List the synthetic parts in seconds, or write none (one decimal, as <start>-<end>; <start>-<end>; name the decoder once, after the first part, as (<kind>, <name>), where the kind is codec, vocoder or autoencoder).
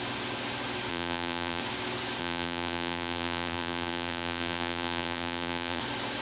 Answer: 0.9-1.6 (vocoder, BigVGAN v2); 2.2-5.8